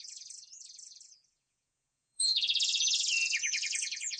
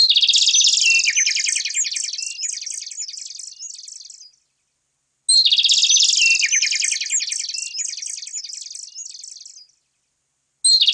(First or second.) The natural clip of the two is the second